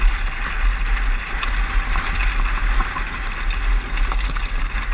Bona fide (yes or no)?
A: yes